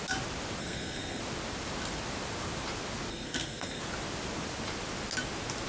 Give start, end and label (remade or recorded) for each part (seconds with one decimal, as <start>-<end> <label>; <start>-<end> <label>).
0.0-0.6 recorded; 0.6-1.2 remade; 1.2-3.1 recorded; 3.1-3.8 remade; 3.8-5.7 recorded